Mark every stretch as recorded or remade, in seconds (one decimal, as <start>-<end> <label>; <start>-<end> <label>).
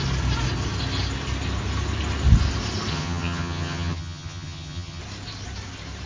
0.0-2.9 recorded; 2.9-5.0 remade; 5.0-6.1 recorded